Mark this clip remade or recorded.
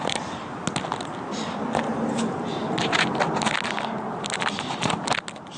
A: recorded